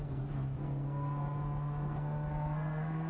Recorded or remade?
remade